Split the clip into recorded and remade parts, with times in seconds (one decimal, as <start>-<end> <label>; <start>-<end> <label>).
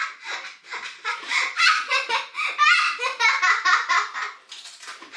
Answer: 0.0-1.1 recorded; 1.1-2.1 remade; 2.1-5.2 recorded